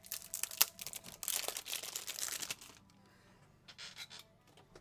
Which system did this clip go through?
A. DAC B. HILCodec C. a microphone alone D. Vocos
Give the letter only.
C